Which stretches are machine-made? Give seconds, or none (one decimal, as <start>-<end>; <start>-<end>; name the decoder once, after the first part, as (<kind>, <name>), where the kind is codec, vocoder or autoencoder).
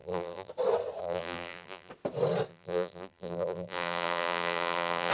0.0-0.5 (vocoder, BigVGAN v2); 1.0-1.9; 2.5-5.1